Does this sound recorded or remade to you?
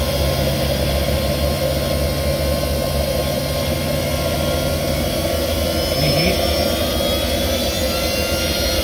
recorded